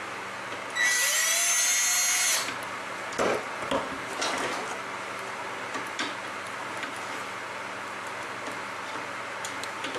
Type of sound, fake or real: real